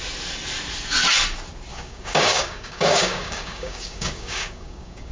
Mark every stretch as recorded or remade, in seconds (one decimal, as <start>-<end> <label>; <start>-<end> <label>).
0.0-1.7 recorded; 1.7-5.1 remade